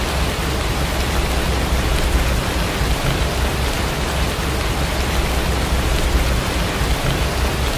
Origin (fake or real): real